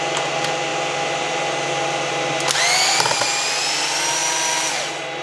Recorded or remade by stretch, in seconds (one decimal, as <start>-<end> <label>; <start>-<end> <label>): 0.0-5.2 recorded